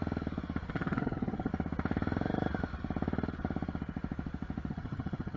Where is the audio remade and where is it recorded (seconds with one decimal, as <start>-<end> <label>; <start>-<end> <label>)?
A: 0.0-0.7 recorded; 0.7-1.5 remade; 1.5-4.7 recorded; 4.7-5.4 remade